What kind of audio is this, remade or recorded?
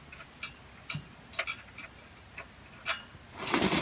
recorded